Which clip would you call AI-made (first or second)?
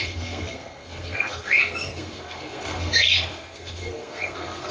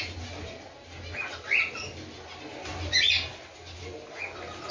first